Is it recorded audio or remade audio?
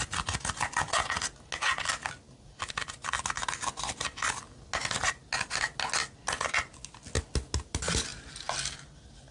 recorded